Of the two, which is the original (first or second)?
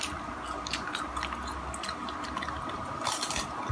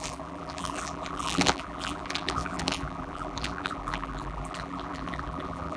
first